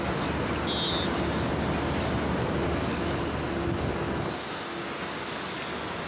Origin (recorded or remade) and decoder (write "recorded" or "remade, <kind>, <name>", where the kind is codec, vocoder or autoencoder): recorded